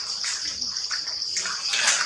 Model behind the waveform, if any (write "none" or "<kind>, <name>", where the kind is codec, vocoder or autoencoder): vocoder, BigVGAN v2